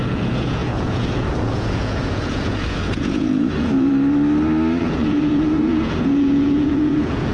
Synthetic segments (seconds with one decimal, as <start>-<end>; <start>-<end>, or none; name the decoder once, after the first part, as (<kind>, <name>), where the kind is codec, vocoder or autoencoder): 0.0-3.9 (vocoder, Vocos); 4.8-7.3